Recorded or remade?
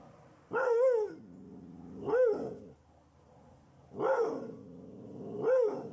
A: recorded